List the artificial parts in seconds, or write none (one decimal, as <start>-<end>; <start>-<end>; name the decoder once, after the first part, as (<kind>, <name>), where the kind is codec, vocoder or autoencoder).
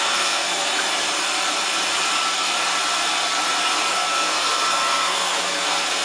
0.0-0.7 (codec, SNAC); 3.9-6.0